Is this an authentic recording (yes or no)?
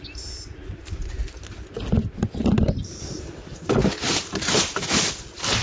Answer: yes